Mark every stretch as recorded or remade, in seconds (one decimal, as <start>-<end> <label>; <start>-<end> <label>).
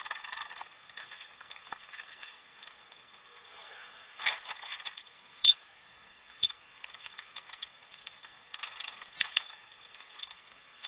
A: 0.0-10.9 remade